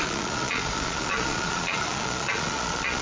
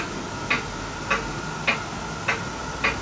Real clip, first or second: second